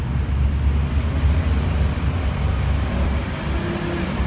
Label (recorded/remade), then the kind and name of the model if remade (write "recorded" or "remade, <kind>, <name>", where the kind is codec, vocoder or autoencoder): recorded